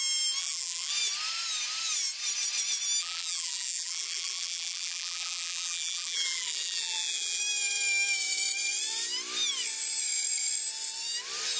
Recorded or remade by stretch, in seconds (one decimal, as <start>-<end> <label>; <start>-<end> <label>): 0.0-0.4 recorded; 0.4-0.9 remade; 0.9-3.0 recorded; 3.0-7.4 remade; 7.4-11.6 recorded